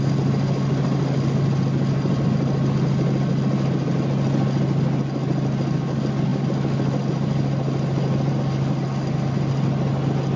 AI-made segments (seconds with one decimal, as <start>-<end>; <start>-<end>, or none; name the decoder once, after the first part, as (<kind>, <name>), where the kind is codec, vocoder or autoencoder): none